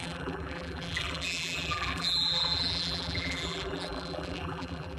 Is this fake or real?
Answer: fake